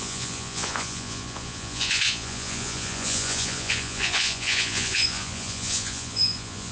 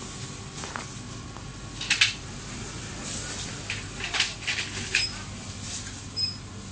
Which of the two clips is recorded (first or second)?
second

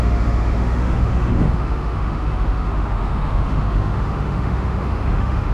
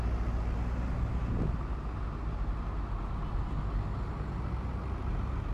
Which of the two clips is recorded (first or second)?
second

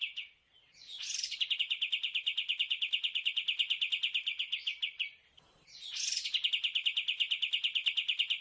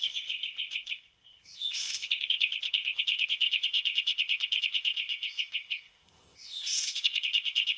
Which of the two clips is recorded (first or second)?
first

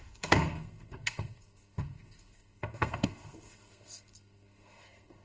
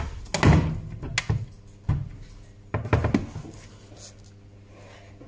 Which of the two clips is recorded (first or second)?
second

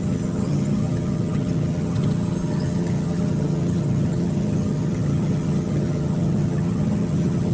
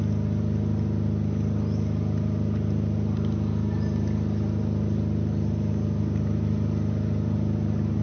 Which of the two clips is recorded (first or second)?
second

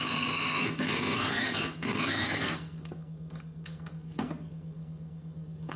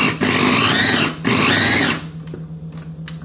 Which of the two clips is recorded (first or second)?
second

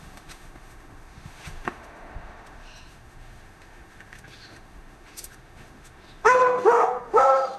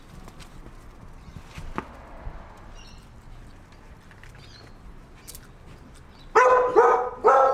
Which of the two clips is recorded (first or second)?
second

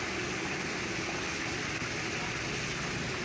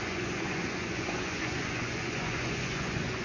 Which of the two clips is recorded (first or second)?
first